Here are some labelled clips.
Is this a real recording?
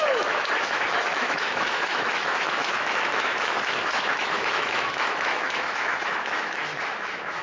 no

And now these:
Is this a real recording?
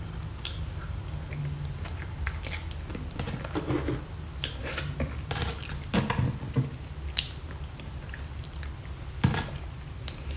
yes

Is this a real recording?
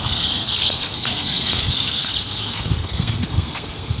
no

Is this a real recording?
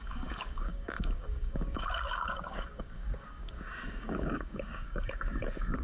no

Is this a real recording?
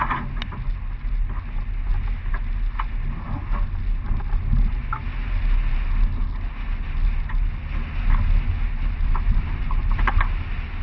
yes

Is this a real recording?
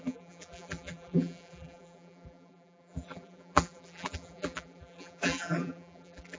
no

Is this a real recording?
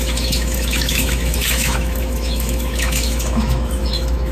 no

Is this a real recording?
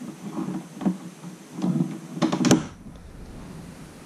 yes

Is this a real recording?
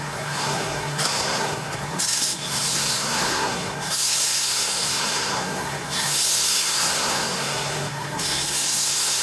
no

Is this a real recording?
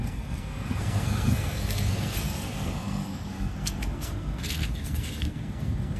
no